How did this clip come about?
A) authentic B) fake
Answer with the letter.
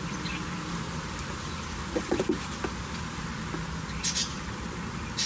A